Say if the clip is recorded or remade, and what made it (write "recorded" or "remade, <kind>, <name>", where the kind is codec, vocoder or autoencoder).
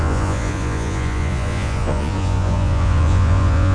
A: remade, vocoder, Vocos